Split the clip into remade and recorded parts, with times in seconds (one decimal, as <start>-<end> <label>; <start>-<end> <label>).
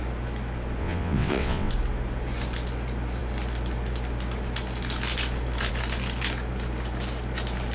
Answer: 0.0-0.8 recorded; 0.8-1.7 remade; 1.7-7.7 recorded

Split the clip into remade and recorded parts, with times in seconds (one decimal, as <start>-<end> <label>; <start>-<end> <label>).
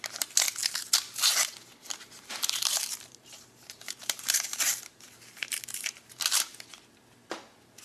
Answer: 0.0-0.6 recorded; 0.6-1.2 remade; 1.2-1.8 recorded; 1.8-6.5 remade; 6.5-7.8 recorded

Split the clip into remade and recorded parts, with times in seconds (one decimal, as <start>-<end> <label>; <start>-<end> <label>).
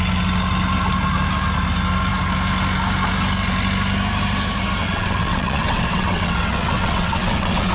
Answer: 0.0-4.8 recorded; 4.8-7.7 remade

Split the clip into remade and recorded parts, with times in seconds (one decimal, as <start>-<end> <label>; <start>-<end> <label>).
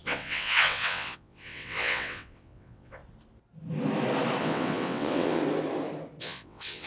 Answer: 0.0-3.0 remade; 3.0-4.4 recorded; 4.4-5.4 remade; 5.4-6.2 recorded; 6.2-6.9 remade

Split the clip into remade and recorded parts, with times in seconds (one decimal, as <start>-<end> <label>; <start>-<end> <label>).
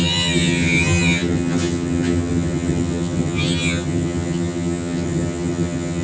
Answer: 0.0-6.0 remade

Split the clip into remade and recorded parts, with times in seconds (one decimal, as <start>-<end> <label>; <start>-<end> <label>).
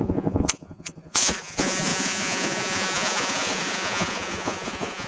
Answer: 0.0-5.1 remade